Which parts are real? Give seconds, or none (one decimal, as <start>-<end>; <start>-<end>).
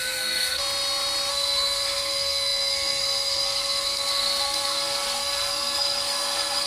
0.6-1.3